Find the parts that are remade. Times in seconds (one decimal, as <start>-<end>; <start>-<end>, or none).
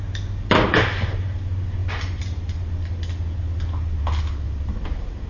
none